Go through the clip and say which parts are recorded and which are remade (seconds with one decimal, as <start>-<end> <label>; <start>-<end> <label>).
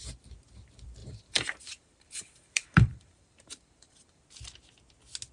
0.0-1.0 recorded; 1.0-4.2 remade; 4.2-5.3 recorded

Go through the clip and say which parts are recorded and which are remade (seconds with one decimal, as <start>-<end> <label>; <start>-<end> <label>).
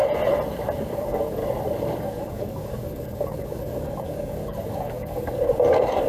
0.0-0.8 recorded; 0.8-1.4 remade; 1.4-2.0 recorded; 2.0-6.1 remade